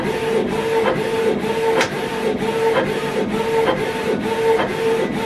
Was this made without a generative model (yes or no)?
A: no